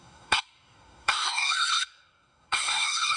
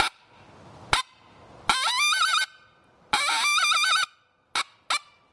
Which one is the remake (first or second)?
first